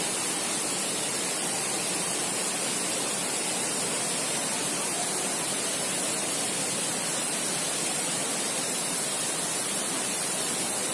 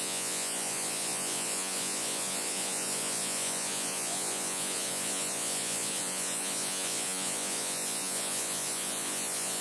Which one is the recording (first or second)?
first